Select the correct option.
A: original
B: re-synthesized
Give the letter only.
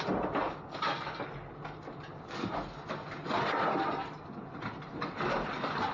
A